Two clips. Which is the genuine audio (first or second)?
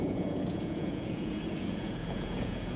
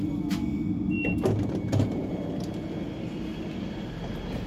second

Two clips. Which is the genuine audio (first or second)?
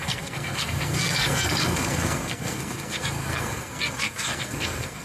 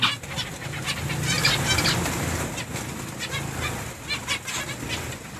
second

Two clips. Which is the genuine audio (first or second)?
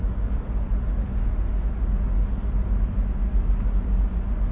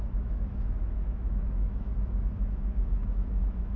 first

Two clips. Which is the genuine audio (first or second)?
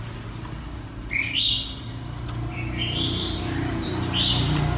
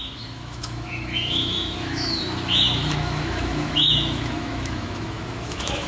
first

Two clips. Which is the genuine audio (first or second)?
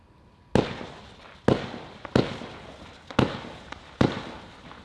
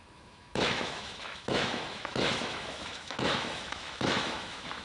first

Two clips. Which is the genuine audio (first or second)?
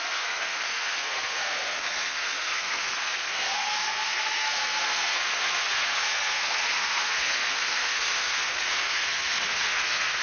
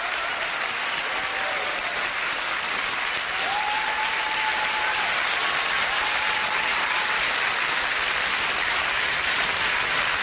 second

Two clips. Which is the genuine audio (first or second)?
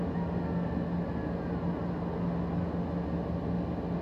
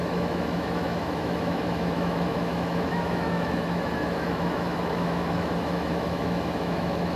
first